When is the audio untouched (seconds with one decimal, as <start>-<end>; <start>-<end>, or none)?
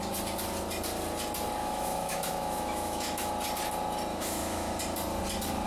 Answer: 0.0-1.6; 3.3-4.1; 4.7-5.7